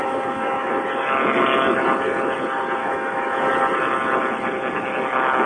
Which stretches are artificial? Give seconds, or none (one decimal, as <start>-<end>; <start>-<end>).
0.0-0.7; 2.8-3.5